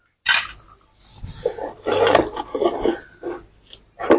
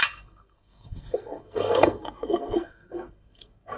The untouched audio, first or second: first